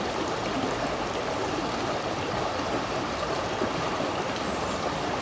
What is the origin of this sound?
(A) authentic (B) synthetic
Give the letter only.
A